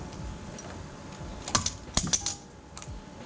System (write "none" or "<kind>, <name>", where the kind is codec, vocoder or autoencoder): none